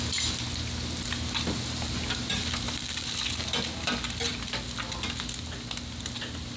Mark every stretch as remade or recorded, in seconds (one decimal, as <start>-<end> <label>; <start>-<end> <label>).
0.0-6.6 recorded